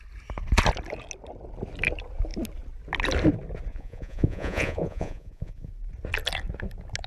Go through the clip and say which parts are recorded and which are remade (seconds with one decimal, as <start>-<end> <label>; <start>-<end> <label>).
0.0-3.7 recorded; 3.7-5.7 remade; 5.7-7.1 recorded